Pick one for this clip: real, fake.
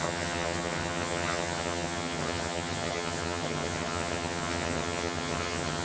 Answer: fake